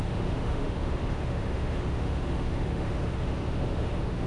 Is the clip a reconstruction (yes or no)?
yes